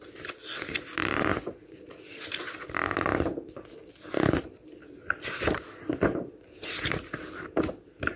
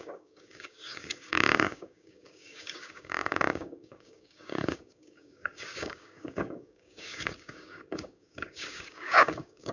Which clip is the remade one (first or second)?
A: second